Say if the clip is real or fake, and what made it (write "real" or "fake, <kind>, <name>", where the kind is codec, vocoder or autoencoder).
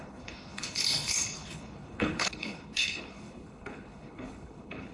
fake, codec, HILCodec